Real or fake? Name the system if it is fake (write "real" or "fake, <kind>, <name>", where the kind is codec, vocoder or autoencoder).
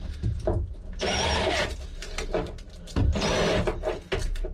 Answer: real